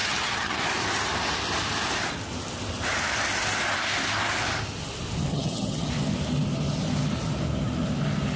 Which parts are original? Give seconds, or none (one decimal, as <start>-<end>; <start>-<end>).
0.6-5.3; 5.9-8.4